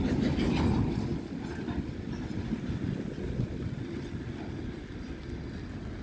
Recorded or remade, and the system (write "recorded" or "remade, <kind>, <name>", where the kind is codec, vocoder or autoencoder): recorded